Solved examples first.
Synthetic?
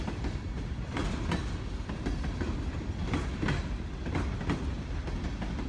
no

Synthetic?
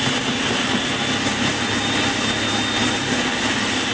no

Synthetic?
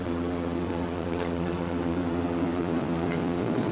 yes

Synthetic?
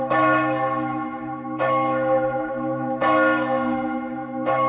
yes